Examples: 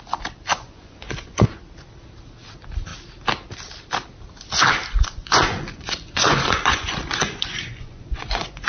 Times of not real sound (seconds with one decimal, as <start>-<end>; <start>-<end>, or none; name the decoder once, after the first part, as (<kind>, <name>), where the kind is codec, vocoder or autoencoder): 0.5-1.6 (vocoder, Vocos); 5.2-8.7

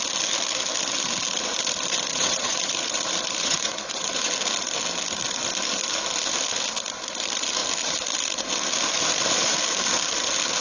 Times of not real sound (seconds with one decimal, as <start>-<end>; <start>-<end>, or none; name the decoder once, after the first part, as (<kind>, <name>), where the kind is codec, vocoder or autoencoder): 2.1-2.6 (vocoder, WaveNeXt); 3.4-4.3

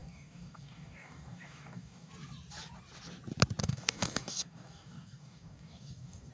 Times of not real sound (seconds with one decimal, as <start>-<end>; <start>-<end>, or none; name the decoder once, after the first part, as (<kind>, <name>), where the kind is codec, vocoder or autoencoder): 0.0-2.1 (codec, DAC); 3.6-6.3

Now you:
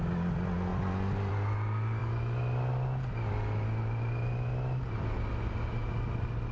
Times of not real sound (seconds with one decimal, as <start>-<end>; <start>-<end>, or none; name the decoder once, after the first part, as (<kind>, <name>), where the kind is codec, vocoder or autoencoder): none